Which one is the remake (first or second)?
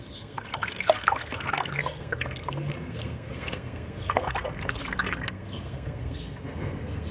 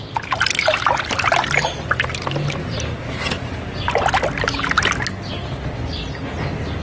first